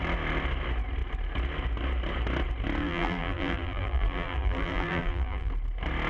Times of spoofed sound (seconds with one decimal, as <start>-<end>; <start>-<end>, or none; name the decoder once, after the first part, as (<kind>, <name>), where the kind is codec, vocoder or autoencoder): 2.8-5.5 (vocoder, BigVGAN v2)